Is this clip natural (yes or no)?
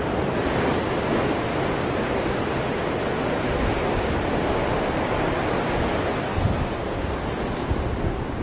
yes